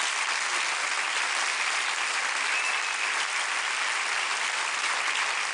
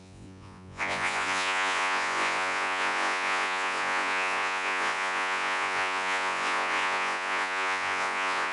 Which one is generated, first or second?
second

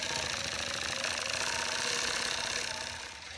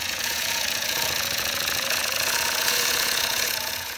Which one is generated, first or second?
second